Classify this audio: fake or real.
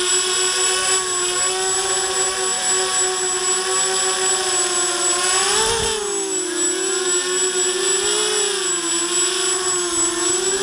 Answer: real